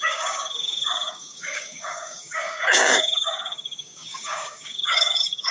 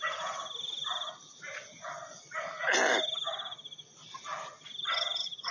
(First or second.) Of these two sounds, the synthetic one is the first